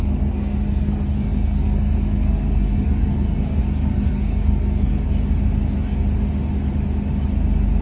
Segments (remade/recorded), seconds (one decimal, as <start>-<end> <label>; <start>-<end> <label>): 0.0-5.1 remade; 5.1-7.8 recorded